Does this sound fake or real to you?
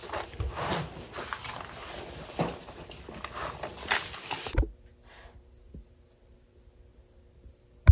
real